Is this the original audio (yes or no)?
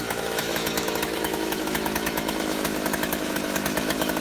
no